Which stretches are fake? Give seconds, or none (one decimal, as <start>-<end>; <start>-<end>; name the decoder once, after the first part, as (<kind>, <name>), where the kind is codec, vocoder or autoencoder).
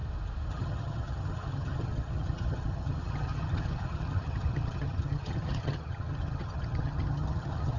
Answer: 0.5-7.8 (vocoder, HiFi-GAN)